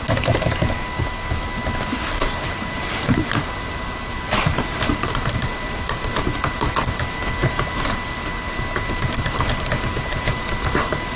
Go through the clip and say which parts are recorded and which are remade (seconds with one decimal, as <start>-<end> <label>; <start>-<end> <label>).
0.0-1.9 recorded; 1.9-3.5 remade; 3.5-4.9 recorded; 4.9-6.0 remade; 6.0-7.4 recorded; 7.4-7.9 remade; 7.9-9.9 recorded; 9.9-11.2 remade